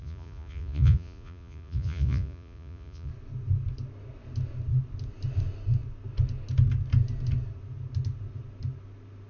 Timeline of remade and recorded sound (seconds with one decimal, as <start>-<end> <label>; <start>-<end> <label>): 0.0-3.1 remade; 3.1-9.3 recorded